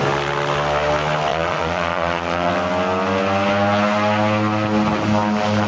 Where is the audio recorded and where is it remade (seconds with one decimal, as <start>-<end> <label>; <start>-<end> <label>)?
0.0-1.3 recorded; 1.3-2.5 remade; 2.5-5.7 recorded